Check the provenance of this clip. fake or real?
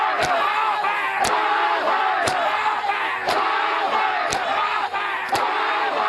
real